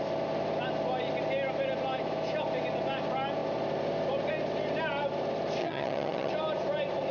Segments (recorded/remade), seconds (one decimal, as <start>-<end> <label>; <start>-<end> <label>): 0.0-5.6 recorded; 5.6-6.3 remade; 6.3-7.1 recorded